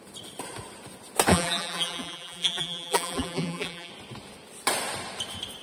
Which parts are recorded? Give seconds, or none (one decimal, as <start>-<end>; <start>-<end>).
0.0-1.3; 3.9-5.6